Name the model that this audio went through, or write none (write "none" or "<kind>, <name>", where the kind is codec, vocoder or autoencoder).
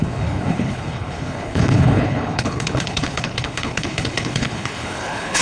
codec, HILCodec